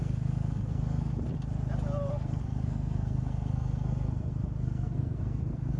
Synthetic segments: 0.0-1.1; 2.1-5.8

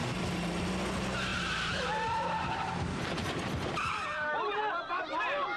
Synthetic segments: 1.3-4.6

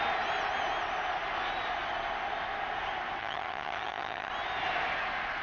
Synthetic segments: 3.2-4.3

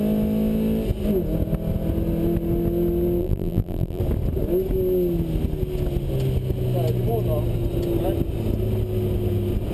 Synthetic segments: 3.2-4.0